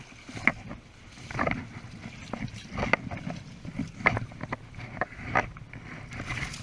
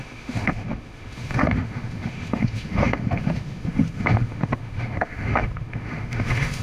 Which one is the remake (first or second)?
second